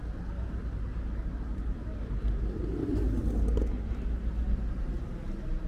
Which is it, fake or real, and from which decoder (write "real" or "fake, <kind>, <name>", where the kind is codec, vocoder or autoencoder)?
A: real